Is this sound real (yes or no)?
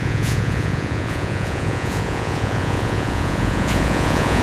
no